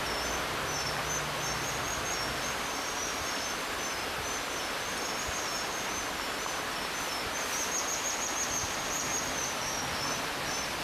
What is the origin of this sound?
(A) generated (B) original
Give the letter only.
B